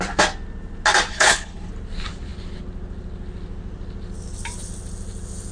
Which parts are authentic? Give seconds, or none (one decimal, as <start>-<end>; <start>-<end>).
0.0-1.1; 1.7-5.5